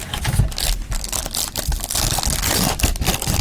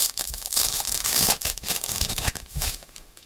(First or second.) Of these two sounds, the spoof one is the second